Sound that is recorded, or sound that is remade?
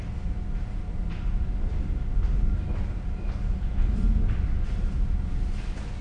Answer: recorded